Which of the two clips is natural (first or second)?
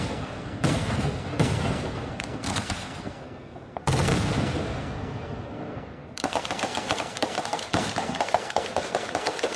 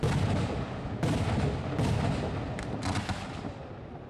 second